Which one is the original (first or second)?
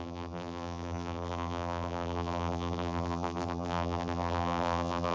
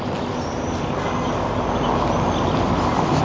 second